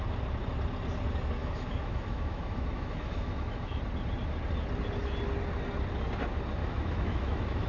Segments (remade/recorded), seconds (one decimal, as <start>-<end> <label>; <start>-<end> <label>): 0.0-1.4 recorded; 1.4-3.8 remade; 3.8-6.6 recorded; 6.6-7.7 remade